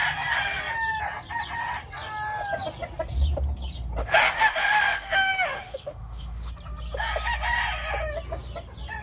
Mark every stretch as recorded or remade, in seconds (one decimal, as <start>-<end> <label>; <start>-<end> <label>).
0.0-4.0 recorded; 4.0-6.5 remade; 6.5-9.0 recorded